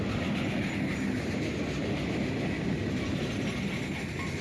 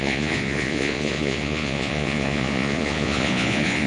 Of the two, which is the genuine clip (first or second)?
first